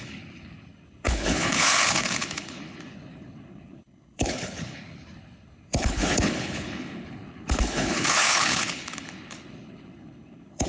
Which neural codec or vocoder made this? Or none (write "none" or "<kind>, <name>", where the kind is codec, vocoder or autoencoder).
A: codec, HILCodec